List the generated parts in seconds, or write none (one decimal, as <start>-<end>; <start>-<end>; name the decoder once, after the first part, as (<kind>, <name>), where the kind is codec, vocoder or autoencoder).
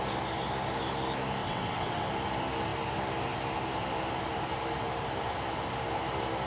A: 1.4-2.1 (vocoder, WaveNeXt)